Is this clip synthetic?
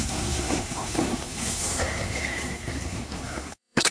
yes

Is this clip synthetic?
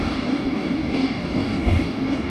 yes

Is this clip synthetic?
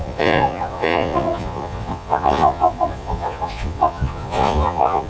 yes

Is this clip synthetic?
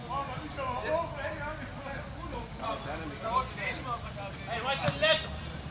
no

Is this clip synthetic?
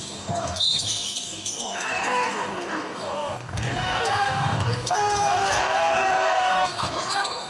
yes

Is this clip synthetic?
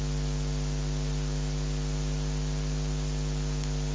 no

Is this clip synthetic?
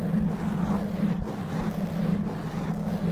no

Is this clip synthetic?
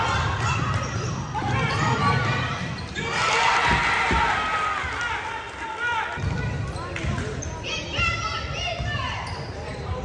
no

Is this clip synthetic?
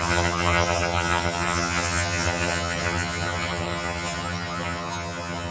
yes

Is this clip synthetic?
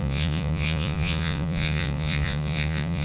yes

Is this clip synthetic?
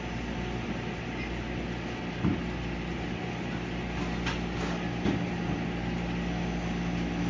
no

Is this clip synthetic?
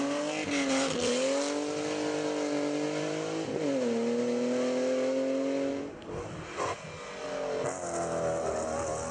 no